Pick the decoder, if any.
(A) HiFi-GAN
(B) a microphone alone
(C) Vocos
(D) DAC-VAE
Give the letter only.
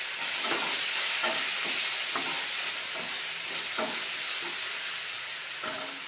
B